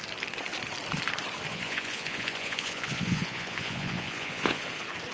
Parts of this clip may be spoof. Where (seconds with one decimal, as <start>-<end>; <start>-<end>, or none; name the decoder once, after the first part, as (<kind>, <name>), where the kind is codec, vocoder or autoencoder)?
1.5-4.6 (vocoder, Vocos)